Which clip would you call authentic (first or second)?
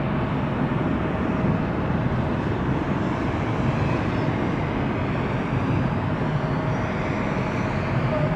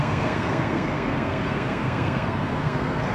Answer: first